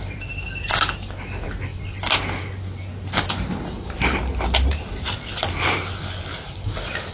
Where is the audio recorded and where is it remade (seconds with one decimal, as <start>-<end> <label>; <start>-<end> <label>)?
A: 0.0-7.1 recorded